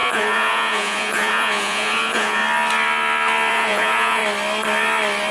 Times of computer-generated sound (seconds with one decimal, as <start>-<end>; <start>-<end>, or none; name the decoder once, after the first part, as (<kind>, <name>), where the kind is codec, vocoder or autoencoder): 0.0-2.4 (vocoder, Vocos); 3.5-4.2